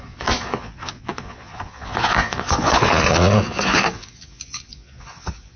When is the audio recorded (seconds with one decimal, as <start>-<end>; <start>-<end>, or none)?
none